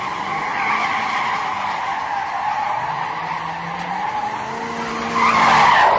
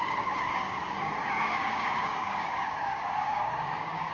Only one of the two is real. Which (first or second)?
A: first